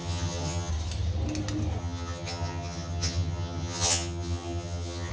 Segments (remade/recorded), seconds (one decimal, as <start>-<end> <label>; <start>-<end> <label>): 0.0-0.7 remade; 0.7-1.8 recorded; 1.8-5.1 remade